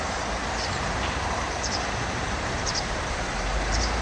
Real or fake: fake